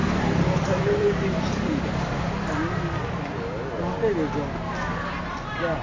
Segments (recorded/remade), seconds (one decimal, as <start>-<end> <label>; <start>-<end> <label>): 0.0-2.0 remade; 2.0-5.8 recorded